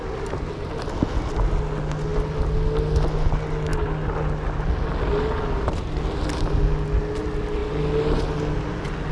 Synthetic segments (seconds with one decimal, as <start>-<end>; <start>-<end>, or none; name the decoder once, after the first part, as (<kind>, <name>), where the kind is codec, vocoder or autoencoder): none